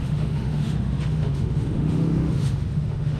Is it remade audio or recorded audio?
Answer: remade